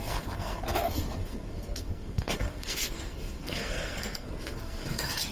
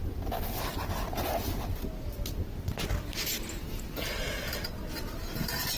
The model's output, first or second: first